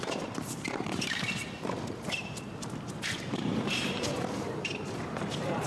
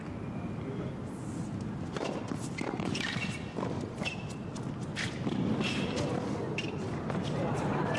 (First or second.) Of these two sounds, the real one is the second